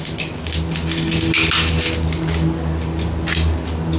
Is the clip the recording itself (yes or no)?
yes